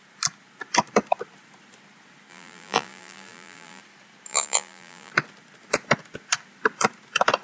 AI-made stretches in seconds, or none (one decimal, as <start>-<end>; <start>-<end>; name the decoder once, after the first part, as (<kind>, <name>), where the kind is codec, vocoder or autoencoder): 2.3-3.8 (vocoder, BigVGAN v2); 4.3-5.1